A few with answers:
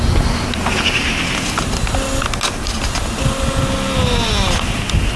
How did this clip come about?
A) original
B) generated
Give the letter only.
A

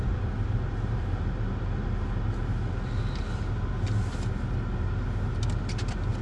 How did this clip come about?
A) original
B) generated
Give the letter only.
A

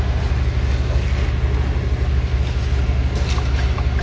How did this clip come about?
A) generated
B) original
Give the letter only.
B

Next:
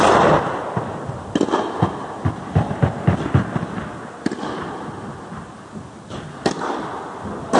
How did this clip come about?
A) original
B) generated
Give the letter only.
A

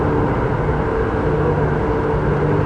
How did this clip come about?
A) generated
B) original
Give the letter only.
B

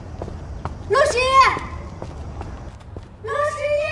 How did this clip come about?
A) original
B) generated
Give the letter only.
A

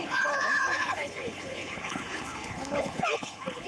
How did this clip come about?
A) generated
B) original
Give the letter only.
A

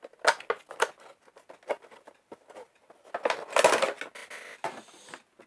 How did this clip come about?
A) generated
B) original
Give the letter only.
B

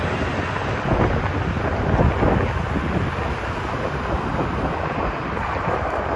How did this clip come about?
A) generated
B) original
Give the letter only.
B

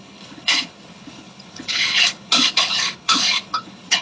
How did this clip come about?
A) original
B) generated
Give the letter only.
B